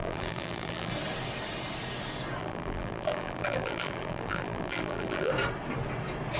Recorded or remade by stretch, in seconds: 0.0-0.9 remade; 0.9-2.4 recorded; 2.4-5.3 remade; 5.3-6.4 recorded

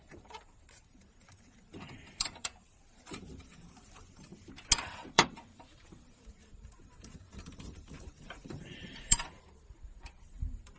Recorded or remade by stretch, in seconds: 0.0-4.3 remade; 4.3-5.1 recorded; 5.1-10.8 remade

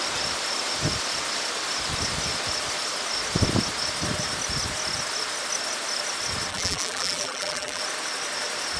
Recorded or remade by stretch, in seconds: 0.0-6.5 recorded; 6.5-7.8 remade; 7.8-8.8 recorded

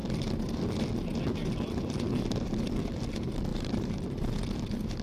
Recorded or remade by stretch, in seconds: 0.0-0.9 remade; 0.9-1.4 recorded; 1.4-3.1 remade; 3.1-3.5 recorded; 3.5-4.4 remade; 4.4-5.0 recorded

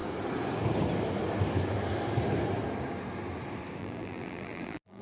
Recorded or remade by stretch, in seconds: 0.0-3.8 recorded; 3.8-5.0 remade

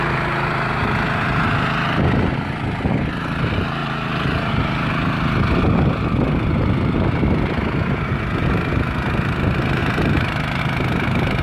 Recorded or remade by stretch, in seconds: 0.0-0.8 remade; 0.8-3.8 recorded; 3.8-4.9 remade; 4.9-9.8 recorded; 9.8-10.6 remade; 10.6-11.4 recorded